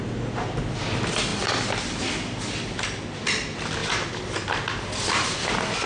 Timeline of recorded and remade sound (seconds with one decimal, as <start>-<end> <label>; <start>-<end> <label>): 0.0-5.9 recorded